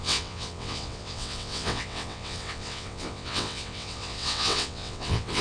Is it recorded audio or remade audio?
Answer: remade